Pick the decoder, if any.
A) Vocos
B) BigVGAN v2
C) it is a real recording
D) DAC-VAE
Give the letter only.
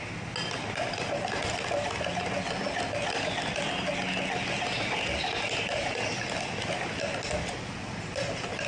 C